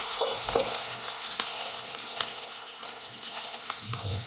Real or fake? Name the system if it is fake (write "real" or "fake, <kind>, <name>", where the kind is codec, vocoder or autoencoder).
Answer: fake, codec, SNAC